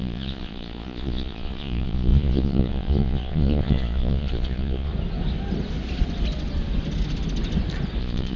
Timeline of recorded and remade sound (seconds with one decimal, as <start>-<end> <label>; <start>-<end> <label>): 0.0-4.9 remade; 4.9-8.0 recorded; 8.0-8.4 remade